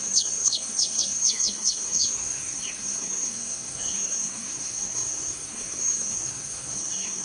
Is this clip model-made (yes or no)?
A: yes